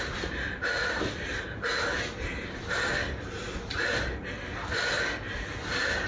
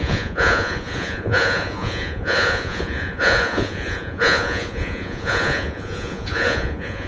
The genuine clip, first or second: first